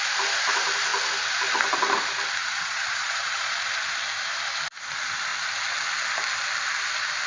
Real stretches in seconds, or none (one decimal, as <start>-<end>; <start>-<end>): 0.0-2.4; 3.7-7.3